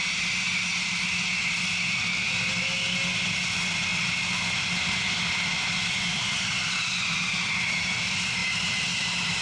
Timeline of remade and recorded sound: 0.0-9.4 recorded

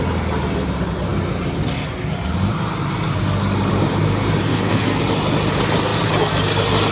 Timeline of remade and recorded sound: 0.0-4.5 recorded; 4.5-5.0 remade; 5.0-6.9 recorded

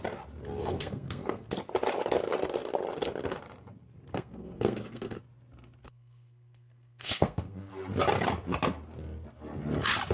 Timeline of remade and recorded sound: 0.0-0.6 recorded; 0.6-1.5 remade; 1.5-4.1 recorded; 4.1-5.2 remade; 5.2-5.8 recorded; 5.8-7.7 remade; 7.7-10.1 recorded

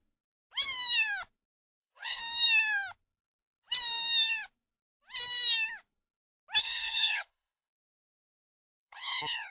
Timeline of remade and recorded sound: 0.0-1.8 recorded; 1.8-2.2 remade; 2.2-6.6 recorded; 6.6-9.5 remade

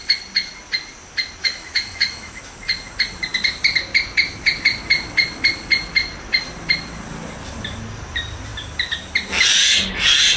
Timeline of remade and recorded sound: 0.0-1.4 recorded; 1.4-2.4 remade; 2.4-10.4 recorded

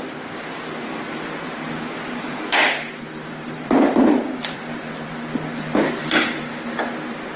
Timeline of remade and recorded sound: 0.0-6.4 remade; 6.4-7.4 recorded